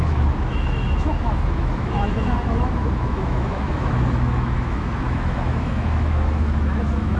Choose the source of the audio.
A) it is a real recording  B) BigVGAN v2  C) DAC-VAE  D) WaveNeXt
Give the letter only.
C